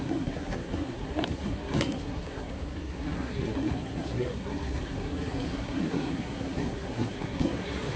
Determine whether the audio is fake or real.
fake